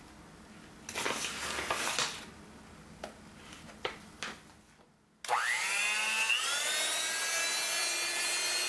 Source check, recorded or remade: recorded